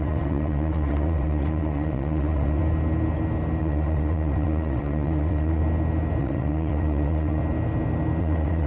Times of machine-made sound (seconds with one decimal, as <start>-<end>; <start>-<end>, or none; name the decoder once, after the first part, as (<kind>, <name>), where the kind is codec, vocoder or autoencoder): 0.0-2.6 (vocoder, WaveNeXt); 3.6-5.6; 6.2-7.4; 8.2-8.7